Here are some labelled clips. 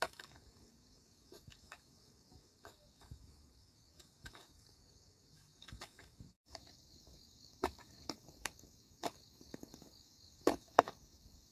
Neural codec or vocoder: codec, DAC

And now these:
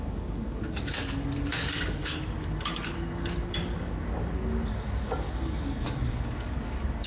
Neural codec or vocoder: codec, DAC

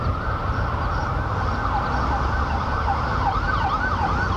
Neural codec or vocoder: none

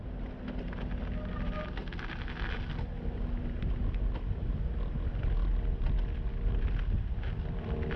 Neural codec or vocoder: none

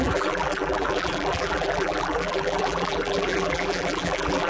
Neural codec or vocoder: vocoder, BigVGAN v2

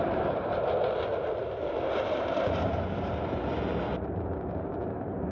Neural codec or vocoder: vocoder, BigVGAN v2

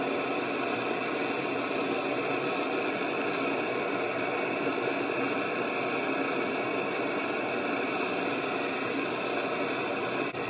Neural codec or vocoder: none